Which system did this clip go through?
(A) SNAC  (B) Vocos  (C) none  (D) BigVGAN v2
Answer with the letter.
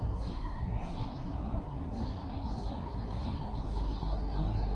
A